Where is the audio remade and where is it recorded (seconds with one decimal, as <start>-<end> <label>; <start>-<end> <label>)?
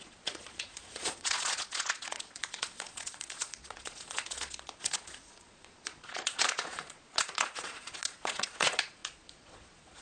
0.0-10.0 remade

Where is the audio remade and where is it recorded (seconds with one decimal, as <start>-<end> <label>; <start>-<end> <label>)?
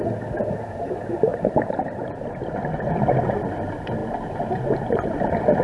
0.0-1.3 recorded; 1.3-2.1 remade; 2.1-5.6 recorded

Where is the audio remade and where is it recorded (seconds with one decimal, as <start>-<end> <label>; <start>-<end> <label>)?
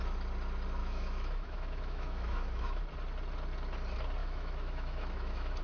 0.0-0.8 recorded; 0.8-2.8 remade; 2.8-4.2 recorded; 4.2-5.6 remade